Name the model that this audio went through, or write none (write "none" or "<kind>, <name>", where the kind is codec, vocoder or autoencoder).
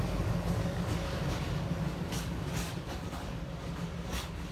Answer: codec, DAC